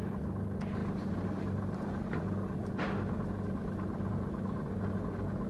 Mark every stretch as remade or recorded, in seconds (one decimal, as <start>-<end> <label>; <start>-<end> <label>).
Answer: 0.0-0.8 recorded; 0.8-4.1 remade; 4.1-5.5 recorded